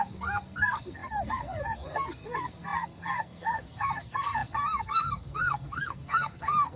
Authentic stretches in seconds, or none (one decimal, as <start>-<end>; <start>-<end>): none